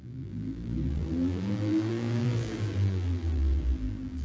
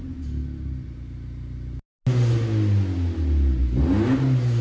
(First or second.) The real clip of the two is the second